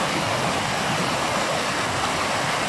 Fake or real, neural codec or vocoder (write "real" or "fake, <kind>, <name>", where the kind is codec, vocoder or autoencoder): real